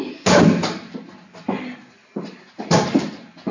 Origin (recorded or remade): recorded